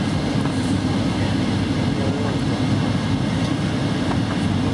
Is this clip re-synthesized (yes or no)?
no